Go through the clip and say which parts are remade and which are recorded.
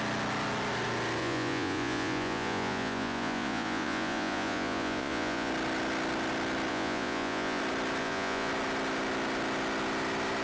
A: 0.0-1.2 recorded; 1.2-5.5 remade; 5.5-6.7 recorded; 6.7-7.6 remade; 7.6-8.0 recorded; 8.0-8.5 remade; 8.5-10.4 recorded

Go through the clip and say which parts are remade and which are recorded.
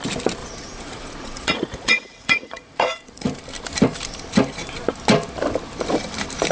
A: 0.0-0.4 recorded; 0.4-3.4 remade; 3.4-6.5 recorded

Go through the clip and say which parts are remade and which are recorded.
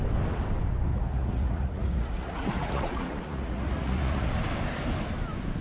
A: 0.0-0.9 recorded; 0.9-4.3 remade; 4.3-5.6 recorded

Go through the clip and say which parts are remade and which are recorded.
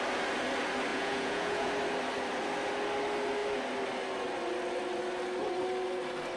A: 0.0-0.9 recorded; 0.9-1.7 remade; 1.7-6.4 recorded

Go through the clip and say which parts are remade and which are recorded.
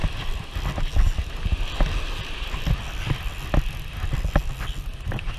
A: 0.0-5.4 recorded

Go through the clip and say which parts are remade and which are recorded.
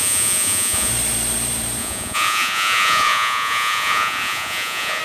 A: 0.0-0.9 remade; 0.9-1.8 recorded; 1.8-5.0 remade